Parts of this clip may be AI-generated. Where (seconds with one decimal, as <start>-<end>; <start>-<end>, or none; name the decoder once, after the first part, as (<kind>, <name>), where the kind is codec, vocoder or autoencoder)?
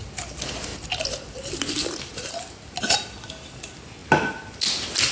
none